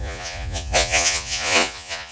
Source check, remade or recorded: remade